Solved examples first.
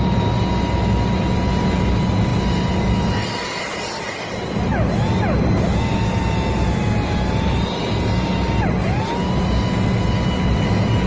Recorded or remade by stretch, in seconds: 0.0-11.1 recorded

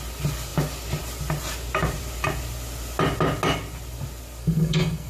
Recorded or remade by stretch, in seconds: 0.0-4.4 recorded; 4.4-5.1 remade